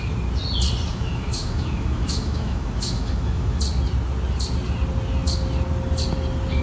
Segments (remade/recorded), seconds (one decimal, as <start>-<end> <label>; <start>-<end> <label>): 0.0-0.9 recorded; 0.9-3.6 remade; 3.6-6.6 recorded